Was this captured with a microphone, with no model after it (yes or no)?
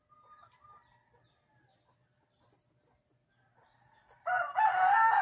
yes